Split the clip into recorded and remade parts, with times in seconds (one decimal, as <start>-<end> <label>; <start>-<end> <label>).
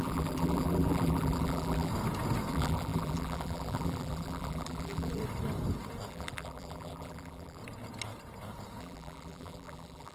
0.0-1.9 remade; 1.9-2.5 recorded; 2.5-5.2 remade; 5.2-6.1 recorded; 6.1-7.6 remade; 7.6-8.8 recorded; 8.8-10.1 remade